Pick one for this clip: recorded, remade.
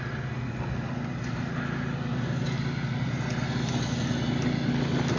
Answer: recorded